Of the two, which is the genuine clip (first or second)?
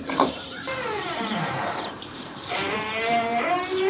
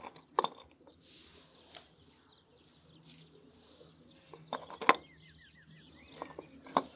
second